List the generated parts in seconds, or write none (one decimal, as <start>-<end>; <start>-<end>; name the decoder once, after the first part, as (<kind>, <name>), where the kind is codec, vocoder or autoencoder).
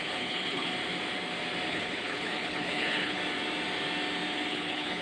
0.0-0.7 (codec, HILCodec); 1.7-3.2; 4.5-5.0